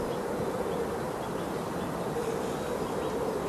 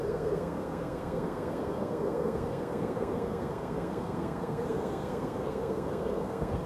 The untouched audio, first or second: first